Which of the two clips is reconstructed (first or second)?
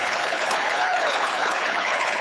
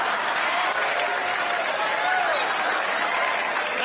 first